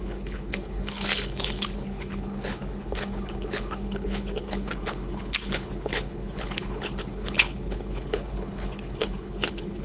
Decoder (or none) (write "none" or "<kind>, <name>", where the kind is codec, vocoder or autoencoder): codec, HILCodec